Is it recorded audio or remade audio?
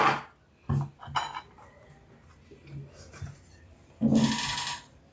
recorded